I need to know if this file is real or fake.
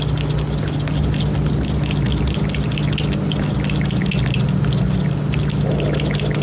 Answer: real